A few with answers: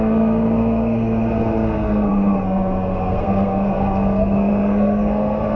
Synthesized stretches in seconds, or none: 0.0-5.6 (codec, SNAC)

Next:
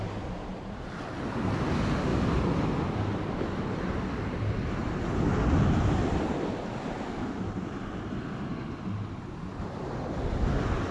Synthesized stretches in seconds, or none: none